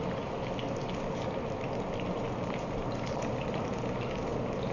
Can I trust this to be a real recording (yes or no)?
yes